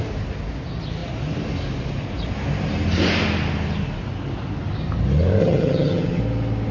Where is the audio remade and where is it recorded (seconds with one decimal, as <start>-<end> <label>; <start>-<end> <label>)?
0.0-5.4 recorded; 5.4-6.2 remade; 6.2-6.7 recorded